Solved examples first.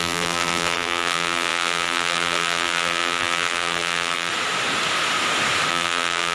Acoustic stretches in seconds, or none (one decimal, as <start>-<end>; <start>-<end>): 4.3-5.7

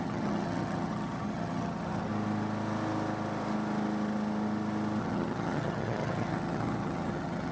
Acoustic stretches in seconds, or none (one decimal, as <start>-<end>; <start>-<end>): 2.1-5.0

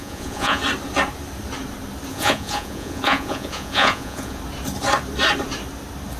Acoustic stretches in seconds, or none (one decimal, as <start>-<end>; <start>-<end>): 0.6-2.1; 4.4-6.2

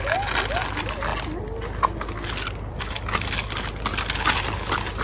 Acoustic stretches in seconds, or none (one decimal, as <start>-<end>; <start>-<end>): 0.0-5.0

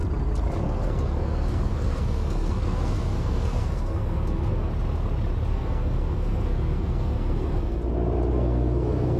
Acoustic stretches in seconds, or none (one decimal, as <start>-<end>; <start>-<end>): 0.0-0.6; 4.7-5.5; 7.8-8.3

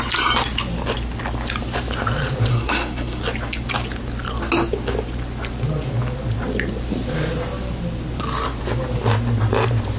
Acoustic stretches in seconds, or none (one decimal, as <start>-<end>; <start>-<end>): 0.0-2.5; 3.2-10.0